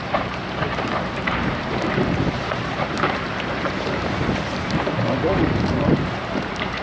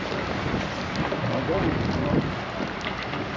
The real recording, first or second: second